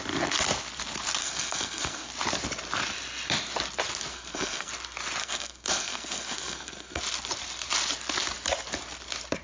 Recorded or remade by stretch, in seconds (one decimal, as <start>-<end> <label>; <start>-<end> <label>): 0.0-1.2 recorded; 1.2-2.1 remade; 2.1-4.1 recorded; 4.1-4.7 remade; 4.7-5.2 recorded; 5.2-7.0 remade; 7.0-9.4 recorded